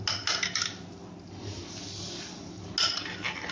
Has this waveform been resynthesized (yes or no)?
no